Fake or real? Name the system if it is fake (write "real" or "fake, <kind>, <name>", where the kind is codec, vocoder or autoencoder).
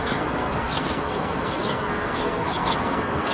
fake, codec, SNAC